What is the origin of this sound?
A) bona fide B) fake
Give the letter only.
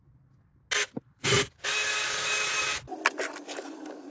A